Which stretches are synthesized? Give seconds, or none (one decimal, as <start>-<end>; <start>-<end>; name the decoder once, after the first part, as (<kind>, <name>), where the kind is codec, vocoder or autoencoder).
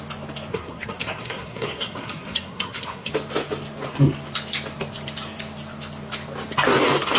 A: 0.5-3.1 (codec, SNAC)